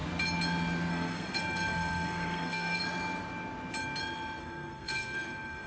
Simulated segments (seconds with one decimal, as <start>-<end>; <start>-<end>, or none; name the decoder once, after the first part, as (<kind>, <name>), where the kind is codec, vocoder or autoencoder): 0.9-2.8 (codec, SNAC); 4.4-5.7